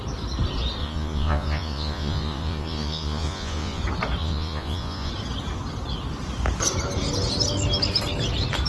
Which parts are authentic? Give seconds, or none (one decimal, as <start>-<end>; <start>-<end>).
0.0-0.8; 3.8-4.2; 5.1-8.7